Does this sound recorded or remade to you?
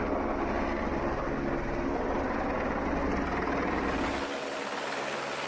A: recorded